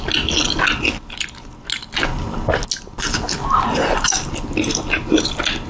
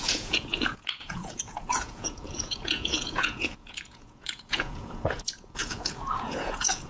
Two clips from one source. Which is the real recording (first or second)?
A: first